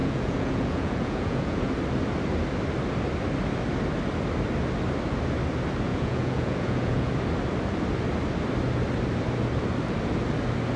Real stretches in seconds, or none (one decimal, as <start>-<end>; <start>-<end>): 1.7-5.9; 7.1-10.8

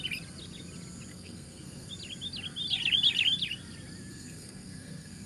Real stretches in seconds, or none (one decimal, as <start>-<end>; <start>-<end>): 0.0-1.1; 1.9-4.1